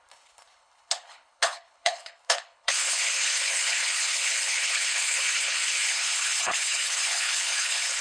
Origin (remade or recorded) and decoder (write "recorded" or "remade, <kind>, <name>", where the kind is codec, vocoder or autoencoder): remade, codec, HILCodec